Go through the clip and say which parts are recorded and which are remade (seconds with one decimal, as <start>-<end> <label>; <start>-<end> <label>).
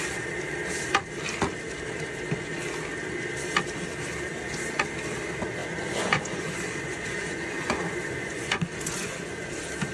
0.0-5.6 recorded; 5.6-9.5 remade; 9.5-9.9 recorded